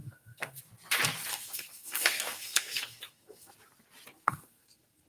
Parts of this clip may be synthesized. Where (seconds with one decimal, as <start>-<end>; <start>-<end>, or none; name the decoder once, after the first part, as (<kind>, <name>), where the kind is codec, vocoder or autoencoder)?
0.0-0.6 (codec, SNAC); 1.3-3.5; 4.1-5.1